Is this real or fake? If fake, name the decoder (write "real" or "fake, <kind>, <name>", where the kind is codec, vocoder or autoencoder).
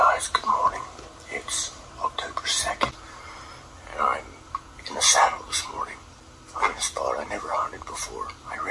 real